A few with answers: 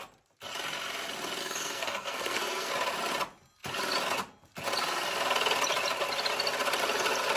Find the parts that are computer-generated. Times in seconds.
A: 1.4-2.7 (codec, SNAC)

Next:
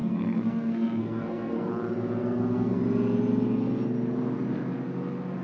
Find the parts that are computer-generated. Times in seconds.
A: 0.0-1.7 (codec, SNAC); 2.2-2.8

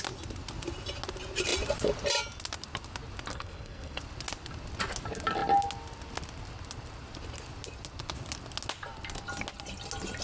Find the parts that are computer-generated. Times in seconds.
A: 3.3-4.0 (codec, SNAC)

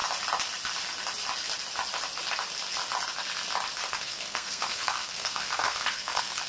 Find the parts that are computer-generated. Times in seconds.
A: 3.9-6.5 (codec, SNAC)

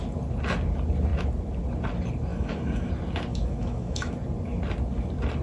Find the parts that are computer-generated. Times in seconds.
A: 2.3-2.9 (autoencoder, DAC-VAE); 3.3-4.1

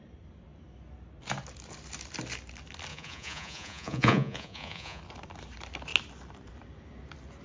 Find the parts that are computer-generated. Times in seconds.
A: 2.9-5.0 (vocoder, Vocos)

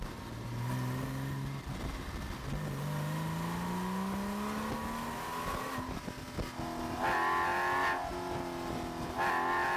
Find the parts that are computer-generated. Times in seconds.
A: none